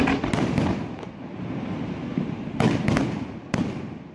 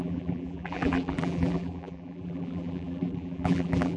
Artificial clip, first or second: second